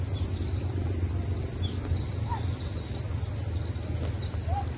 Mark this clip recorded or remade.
recorded